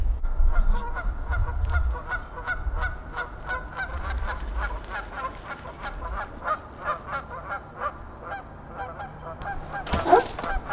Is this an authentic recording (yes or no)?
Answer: yes